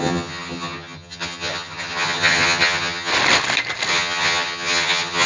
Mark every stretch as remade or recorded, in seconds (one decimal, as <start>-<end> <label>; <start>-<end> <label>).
0.0-3.1 remade; 3.1-3.9 recorded; 3.9-5.3 remade